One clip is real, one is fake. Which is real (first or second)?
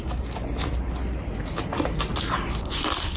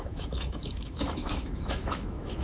first